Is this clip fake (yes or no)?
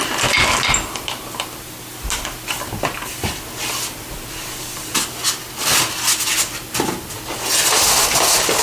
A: no